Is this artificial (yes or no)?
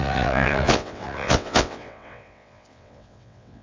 yes